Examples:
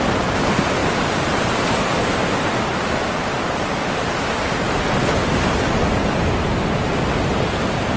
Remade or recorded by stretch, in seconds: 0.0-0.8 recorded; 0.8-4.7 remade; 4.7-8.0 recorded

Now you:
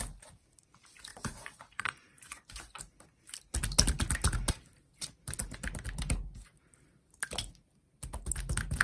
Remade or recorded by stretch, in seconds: 0.0-1.1 recorded; 1.1-2.8 remade; 2.8-8.8 recorded